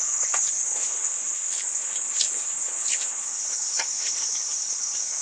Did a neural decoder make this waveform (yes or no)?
yes